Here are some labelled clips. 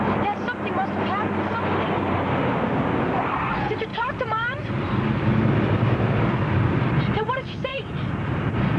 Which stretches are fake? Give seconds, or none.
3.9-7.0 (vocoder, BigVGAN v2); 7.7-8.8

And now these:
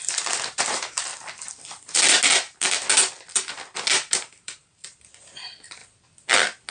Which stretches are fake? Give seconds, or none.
0.0-1.1 (vocoder, BigVGAN v2); 4.1-5.8

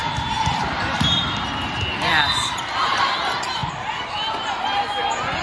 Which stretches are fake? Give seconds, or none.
0.0-2.9 (vocoder, BigVGAN v2); 3.6-4.1

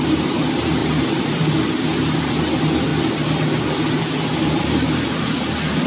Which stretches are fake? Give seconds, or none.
0.8-1.5 (vocoder, BigVGAN v2)